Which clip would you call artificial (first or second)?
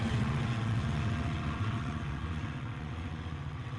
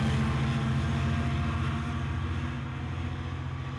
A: first